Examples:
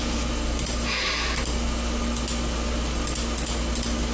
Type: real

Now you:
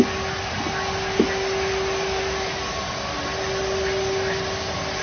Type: real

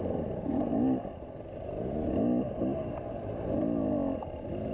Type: real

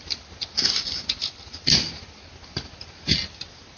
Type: real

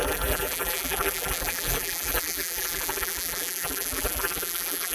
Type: fake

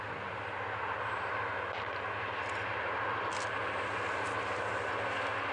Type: real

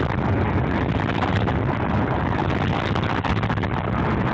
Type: real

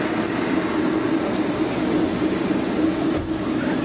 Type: real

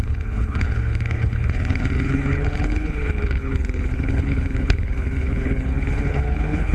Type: fake